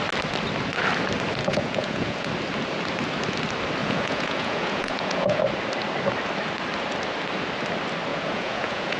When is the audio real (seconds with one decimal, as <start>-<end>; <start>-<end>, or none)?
0.0-1.4; 2.3-3.8; 5.4-8.1